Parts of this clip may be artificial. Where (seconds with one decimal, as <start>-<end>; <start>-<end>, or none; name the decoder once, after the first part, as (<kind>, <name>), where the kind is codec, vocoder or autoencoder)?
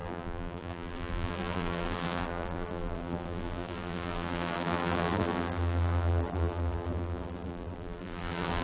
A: 0.0-8.6 (vocoder, BigVGAN v2)